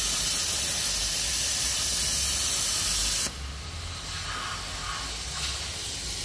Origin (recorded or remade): recorded